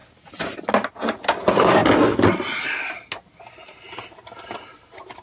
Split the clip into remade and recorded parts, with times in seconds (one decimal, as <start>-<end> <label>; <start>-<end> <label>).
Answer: 0.0-5.2 recorded